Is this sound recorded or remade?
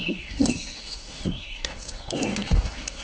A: remade